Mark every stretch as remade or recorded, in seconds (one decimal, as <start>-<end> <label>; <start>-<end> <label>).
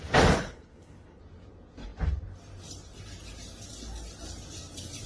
0.0-0.4 recorded; 0.4-1.2 remade; 1.2-5.1 recorded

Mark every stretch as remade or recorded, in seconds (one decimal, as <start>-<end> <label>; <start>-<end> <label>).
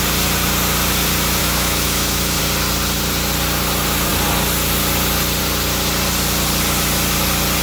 0.0-1.4 recorded; 1.4-2.4 remade; 2.4-7.6 recorded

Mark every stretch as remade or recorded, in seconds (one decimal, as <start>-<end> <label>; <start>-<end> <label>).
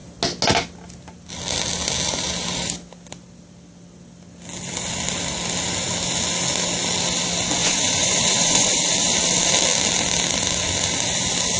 0.0-7.6 recorded; 7.6-8.8 remade; 8.8-11.6 recorded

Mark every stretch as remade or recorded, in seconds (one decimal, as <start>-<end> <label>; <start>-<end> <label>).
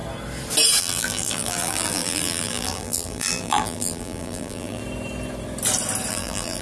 0.0-0.8 recorded; 0.8-4.8 remade; 4.8-6.1 recorded; 6.1-6.6 remade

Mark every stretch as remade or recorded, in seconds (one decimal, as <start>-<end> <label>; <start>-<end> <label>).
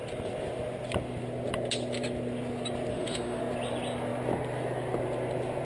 0.0-2.9 recorded; 2.9-3.4 remade; 3.4-5.6 recorded